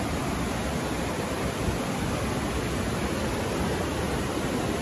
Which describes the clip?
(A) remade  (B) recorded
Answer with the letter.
B